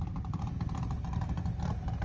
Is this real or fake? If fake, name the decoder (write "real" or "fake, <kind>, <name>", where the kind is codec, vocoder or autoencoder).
real